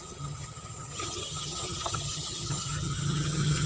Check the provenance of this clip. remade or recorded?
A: remade